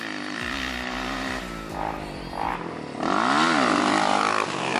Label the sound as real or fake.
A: real